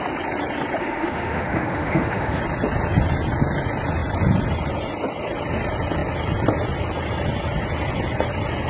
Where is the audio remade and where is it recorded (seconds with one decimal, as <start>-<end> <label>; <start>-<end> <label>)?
0.0-0.8 recorded; 0.8-2.4 remade; 2.4-8.7 recorded